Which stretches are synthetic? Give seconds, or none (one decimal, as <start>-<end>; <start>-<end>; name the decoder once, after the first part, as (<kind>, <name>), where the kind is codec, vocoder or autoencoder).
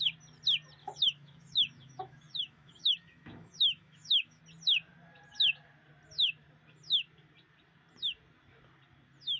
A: 0.8-4.4 (autoencoder, DAC-VAE)